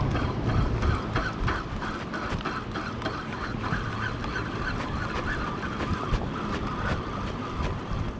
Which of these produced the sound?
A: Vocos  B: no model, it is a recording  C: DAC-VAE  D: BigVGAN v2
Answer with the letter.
D